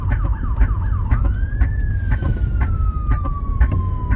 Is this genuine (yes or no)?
yes